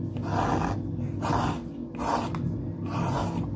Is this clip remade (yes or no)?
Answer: no